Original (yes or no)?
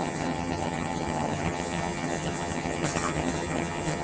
no